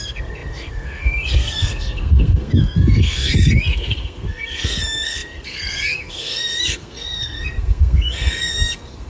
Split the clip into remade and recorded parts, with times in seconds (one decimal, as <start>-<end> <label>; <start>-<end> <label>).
0.0-9.1 remade